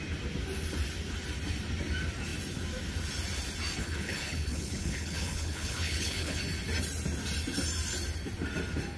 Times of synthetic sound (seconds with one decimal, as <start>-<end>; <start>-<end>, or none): 3.8-6.4